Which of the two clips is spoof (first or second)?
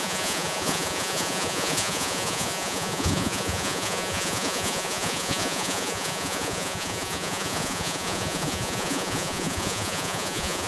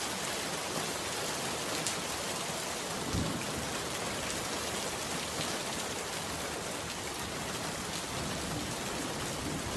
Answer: first